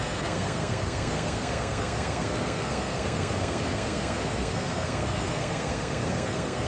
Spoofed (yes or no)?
yes